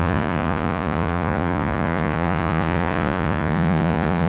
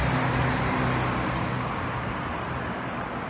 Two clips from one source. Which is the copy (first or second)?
first